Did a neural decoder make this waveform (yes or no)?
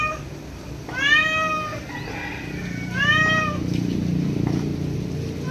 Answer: no